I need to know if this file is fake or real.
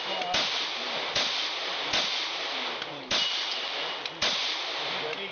real